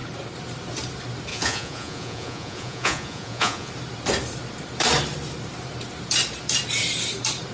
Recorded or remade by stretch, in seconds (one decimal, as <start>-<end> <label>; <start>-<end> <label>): 0.0-1.3 recorded; 1.3-3.7 remade; 3.7-7.5 recorded